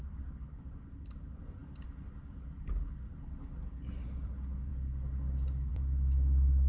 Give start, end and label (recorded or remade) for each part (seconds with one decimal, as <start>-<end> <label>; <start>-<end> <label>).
0.0-6.7 recorded